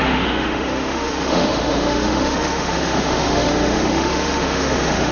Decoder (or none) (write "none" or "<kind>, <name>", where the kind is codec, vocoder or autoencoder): autoencoder, DAC-VAE